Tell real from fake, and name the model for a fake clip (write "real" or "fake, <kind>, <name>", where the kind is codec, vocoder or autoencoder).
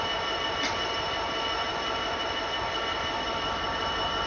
real